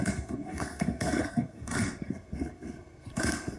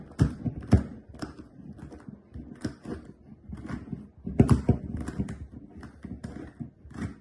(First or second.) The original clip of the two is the second